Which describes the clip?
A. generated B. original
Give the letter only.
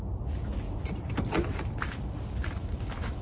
B